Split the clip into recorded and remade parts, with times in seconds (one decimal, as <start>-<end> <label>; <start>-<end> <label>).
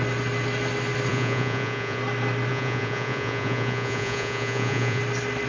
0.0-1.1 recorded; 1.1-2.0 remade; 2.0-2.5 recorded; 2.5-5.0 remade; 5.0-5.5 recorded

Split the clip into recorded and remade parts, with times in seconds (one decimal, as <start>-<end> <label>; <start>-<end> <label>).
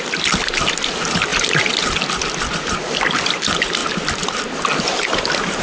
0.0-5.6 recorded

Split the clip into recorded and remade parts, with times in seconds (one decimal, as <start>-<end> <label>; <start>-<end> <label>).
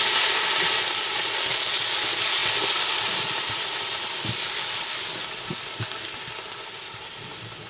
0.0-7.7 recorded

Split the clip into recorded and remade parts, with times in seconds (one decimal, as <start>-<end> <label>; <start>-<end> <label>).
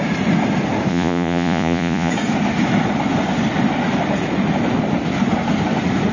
0.0-0.9 recorded; 0.9-2.1 remade; 2.1-6.1 recorded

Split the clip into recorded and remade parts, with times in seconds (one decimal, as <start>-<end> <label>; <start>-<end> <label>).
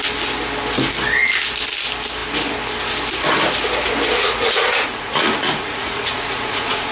0.0-4.2 recorded; 4.2-6.9 remade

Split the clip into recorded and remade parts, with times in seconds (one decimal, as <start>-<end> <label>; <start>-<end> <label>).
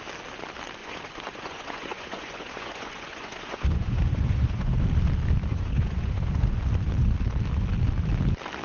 0.0-0.8 recorded; 0.8-4.8 remade; 4.8-5.5 recorded; 5.5-6.6 remade; 6.6-8.6 recorded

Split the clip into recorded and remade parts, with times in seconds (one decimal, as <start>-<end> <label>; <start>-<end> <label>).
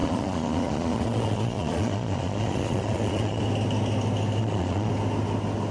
0.0-3.4 remade; 3.4-4.4 recorded; 4.4-4.9 remade; 4.9-5.7 recorded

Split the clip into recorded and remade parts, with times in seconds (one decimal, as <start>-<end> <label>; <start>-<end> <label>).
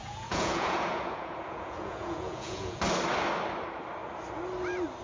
0.0-2.8 remade; 2.8-5.0 recorded